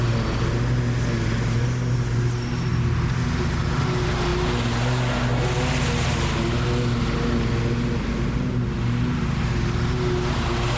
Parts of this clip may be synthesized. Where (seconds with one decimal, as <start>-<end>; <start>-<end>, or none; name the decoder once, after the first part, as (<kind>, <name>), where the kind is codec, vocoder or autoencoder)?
none